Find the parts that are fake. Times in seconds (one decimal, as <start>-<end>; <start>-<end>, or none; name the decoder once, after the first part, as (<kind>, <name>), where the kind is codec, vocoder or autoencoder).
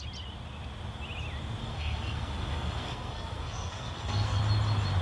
1.6-4.4 (codec, SNAC)